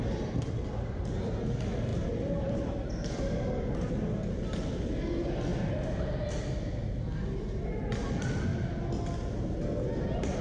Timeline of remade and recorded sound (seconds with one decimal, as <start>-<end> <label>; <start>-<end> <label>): 0.0-1.9 recorded; 1.9-2.7 remade; 2.7-10.4 recorded